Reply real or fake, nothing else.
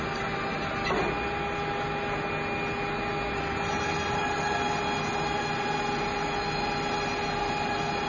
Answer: real